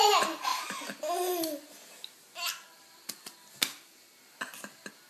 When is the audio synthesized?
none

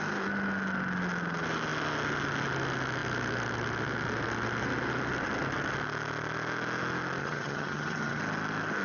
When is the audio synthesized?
7.2-8.2 (vocoder, HiFi-GAN)